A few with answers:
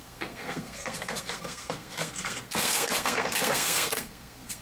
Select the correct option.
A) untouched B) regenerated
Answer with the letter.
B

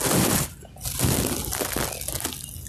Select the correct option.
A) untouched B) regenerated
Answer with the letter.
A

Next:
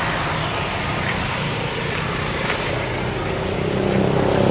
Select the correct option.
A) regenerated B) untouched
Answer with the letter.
B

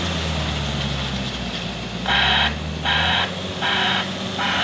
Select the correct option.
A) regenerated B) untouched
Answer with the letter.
B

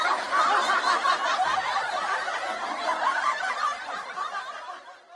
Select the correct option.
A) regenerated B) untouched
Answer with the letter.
B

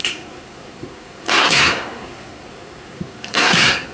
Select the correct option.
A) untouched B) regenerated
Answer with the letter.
B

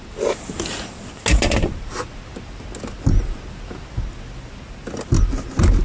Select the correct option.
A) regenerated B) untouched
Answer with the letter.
B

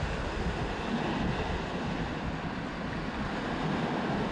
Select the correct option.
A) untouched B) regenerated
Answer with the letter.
A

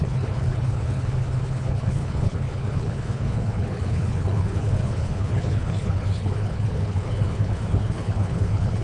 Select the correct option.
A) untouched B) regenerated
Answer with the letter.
B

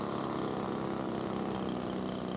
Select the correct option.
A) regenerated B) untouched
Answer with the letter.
B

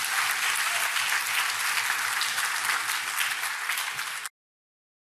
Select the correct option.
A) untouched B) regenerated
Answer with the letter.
A